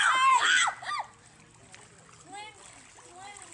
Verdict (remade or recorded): recorded